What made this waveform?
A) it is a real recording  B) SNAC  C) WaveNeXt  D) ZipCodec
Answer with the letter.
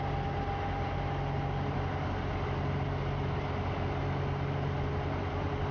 A